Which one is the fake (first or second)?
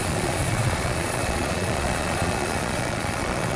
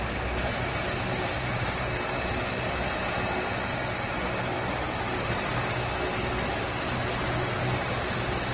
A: first